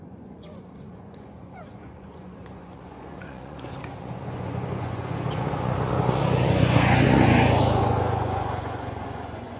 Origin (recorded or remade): remade